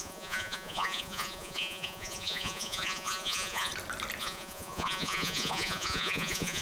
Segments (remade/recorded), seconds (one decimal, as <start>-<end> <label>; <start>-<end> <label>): 0.0-3.7 remade; 3.7-4.2 recorded; 4.2-6.6 remade

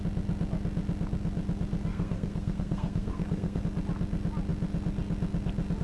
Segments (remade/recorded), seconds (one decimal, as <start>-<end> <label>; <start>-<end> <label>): 0.0-1.9 recorded; 1.9-3.6 remade; 3.6-5.8 recorded

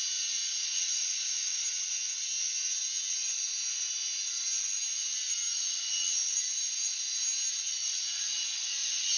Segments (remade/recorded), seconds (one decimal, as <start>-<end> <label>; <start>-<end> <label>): 0.0-1.1 recorded; 1.1-1.6 remade; 1.6-9.2 recorded

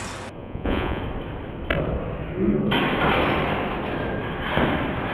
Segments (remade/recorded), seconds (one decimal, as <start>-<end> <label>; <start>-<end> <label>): 0.0-0.4 recorded; 0.4-1.0 remade; 1.0-5.1 recorded

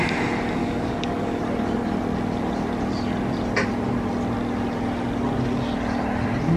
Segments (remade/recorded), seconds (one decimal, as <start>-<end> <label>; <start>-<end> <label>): 0.0-0.6 recorded; 0.6-1.4 remade; 1.4-6.6 recorded